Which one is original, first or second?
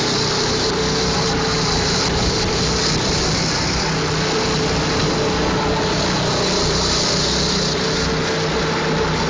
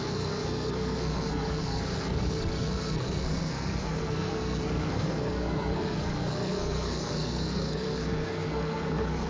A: first